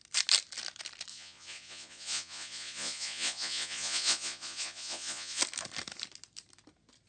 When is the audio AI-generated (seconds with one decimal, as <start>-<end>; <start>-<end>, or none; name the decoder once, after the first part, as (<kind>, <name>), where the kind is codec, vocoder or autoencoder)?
1.1-5.4 (vocoder, Vocos)